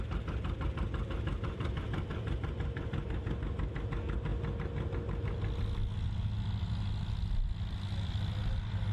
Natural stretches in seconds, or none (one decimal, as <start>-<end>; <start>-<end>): 0.0-8.9